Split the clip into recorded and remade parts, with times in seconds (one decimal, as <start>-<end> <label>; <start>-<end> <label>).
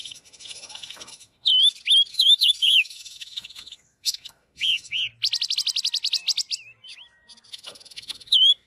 0.0-1.5 remade; 1.5-2.1 recorded; 2.1-5.0 remade; 5.0-7.5 recorded; 7.5-8.7 remade